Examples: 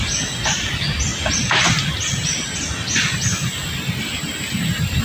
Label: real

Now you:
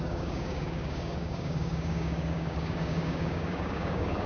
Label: fake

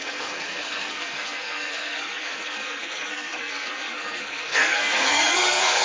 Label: fake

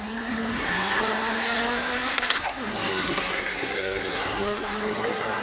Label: fake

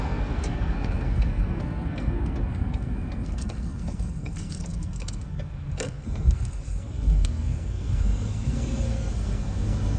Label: fake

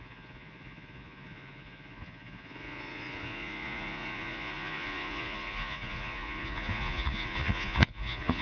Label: fake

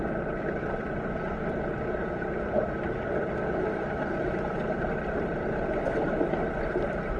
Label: fake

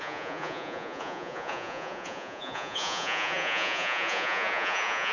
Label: fake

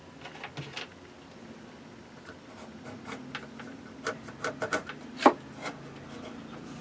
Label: real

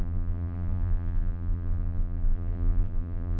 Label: fake